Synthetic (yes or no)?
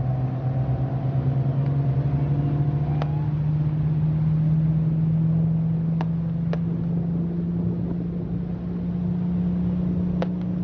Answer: no